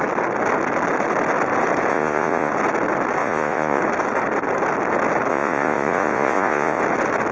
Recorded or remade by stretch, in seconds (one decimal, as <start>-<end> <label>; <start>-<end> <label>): 0.0-1.9 recorded; 1.9-2.5 remade; 2.5-3.2 recorded; 3.2-3.8 remade; 3.8-5.3 recorded; 5.3-6.8 remade; 6.8-7.3 recorded